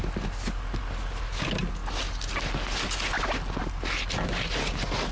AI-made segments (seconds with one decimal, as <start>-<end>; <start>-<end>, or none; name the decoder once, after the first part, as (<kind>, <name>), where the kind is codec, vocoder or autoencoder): none

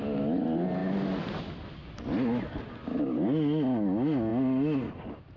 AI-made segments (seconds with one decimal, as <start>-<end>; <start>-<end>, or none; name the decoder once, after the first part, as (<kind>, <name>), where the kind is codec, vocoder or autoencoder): none

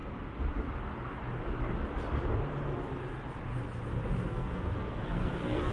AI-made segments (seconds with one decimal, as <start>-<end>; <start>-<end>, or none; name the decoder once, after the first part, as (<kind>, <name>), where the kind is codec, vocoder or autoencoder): 4.3-5.7 (codec, SNAC)

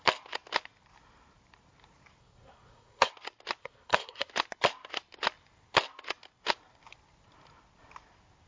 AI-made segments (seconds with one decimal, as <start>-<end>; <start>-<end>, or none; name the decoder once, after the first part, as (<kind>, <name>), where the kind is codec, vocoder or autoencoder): 2.2-3.1 (codec, SNAC); 3.6-4.3

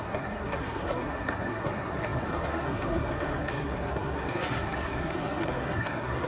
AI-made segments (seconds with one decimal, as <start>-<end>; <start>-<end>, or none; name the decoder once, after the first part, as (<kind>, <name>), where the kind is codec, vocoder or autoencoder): 0.0-6.3 (codec, SNAC)